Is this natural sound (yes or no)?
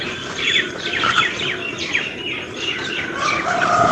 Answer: no